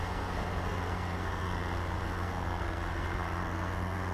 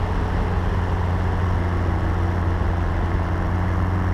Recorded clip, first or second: second